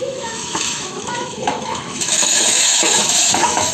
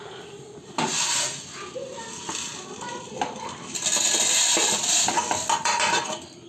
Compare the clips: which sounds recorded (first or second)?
second